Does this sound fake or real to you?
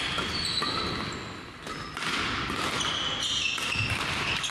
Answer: real